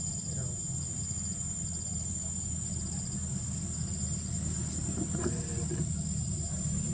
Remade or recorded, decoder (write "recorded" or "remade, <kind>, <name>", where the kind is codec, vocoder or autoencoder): recorded